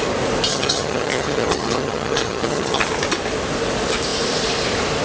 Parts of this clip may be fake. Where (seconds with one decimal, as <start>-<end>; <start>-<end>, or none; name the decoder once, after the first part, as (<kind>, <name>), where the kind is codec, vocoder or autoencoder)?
0.5-2.9 (vocoder, HiFi-GAN)

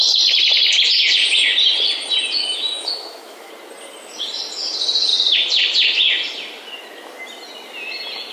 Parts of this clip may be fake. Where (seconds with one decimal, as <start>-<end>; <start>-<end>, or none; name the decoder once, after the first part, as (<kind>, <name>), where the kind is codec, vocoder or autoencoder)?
2.4-3.5 (autoencoder, DAC-VAE)

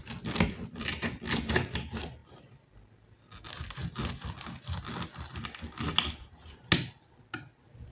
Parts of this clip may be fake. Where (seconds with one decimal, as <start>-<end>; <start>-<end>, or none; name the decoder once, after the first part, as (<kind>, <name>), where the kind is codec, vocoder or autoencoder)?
none

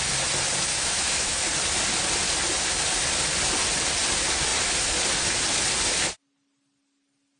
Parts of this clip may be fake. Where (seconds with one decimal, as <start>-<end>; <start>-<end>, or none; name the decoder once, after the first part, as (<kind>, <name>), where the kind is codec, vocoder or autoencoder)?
0.7-1.4 (autoencoder, DAC-VAE)

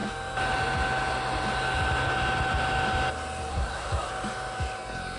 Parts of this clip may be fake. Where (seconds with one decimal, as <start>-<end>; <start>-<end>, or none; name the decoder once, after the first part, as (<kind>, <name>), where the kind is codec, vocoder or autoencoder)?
3.5-4.1 (codec, SNAC)

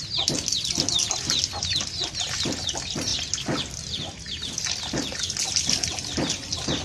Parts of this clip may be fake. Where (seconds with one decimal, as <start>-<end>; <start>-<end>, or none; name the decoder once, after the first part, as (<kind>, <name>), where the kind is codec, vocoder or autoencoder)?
none

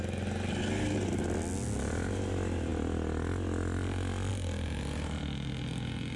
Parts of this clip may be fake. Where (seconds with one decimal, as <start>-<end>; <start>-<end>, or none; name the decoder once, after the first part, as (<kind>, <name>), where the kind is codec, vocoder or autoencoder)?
none